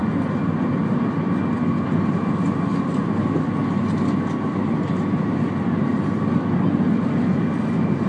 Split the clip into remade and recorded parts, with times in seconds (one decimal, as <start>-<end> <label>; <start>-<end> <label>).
0.0-8.1 recorded